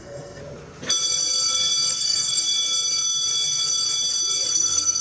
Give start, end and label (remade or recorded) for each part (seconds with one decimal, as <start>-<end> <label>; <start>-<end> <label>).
0.0-0.4 remade; 0.4-1.9 recorded; 1.9-2.4 remade; 2.4-4.5 recorded; 4.5-5.0 remade